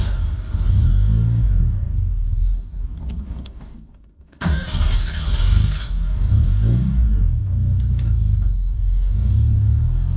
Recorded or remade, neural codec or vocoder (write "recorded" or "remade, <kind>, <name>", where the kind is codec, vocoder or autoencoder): remade, codec, DAC